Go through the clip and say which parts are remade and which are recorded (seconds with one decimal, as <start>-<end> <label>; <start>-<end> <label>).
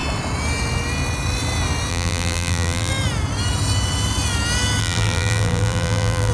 0.0-1.9 recorded; 1.9-2.9 remade; 2.9-4.8 recorded; 4.8-6.3 remade